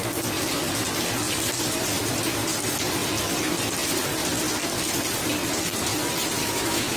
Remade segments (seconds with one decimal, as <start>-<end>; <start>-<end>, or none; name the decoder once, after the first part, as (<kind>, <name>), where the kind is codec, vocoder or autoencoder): 6.4-7.0 (autoencoder, DAC-VAE)